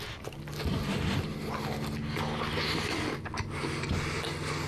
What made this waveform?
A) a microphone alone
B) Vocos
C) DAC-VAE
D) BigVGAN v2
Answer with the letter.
A